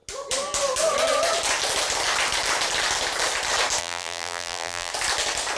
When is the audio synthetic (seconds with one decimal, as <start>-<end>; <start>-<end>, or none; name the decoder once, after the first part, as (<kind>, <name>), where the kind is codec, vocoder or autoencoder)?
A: 3.8-4.9 (vocoder, BigVGAN v2)

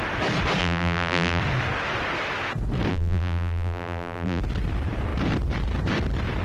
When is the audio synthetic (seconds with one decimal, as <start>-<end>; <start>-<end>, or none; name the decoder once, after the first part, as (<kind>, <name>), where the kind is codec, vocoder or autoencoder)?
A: 0.6-1.4 (vocoder, BigVGAN v2); 2.9-4.4

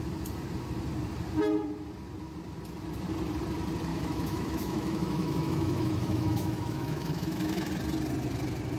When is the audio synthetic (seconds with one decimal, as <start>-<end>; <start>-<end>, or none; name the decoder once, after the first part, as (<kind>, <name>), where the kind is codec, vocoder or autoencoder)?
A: 3.9-7.7 (autoencoder, DAC-VAE)